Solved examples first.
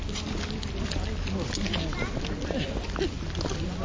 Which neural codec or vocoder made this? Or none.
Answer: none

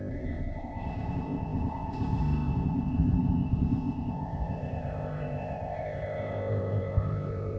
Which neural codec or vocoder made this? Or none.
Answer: codec, ZipCodec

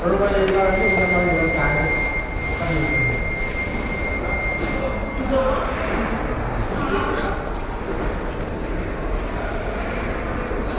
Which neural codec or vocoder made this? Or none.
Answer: none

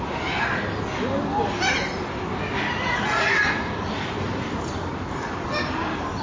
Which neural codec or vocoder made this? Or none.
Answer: none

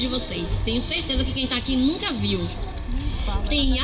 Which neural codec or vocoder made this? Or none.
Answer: none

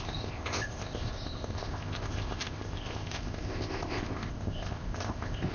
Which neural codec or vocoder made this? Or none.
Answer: codec, ZipCodec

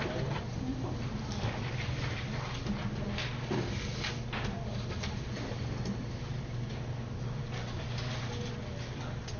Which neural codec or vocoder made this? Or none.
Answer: none